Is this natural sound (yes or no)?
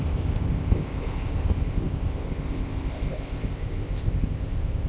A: no